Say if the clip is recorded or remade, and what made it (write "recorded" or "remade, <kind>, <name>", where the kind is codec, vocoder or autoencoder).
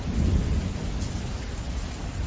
recorded